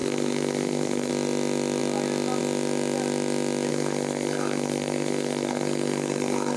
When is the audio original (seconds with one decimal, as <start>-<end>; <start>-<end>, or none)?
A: 1.1-3.7

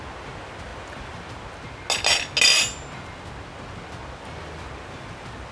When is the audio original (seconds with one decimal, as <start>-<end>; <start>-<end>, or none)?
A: 0.0-5.5